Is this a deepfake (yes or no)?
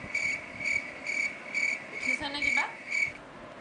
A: no